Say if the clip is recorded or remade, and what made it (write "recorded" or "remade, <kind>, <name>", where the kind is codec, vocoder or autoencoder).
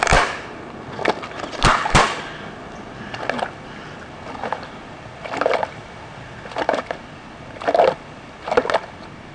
recorded